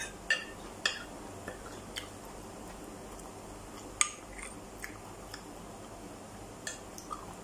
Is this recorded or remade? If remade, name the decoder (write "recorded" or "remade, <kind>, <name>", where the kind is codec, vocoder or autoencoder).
recorded